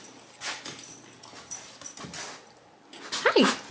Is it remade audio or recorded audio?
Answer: recorded